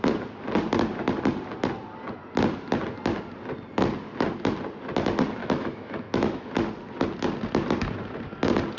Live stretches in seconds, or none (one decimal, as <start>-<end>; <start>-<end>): 0.0-5.4; 6.5-8.8